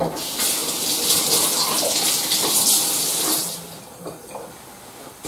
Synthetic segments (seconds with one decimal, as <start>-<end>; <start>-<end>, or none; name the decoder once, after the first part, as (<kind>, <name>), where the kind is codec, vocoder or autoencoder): none